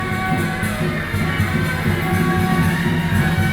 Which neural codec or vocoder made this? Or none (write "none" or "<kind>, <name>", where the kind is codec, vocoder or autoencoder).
none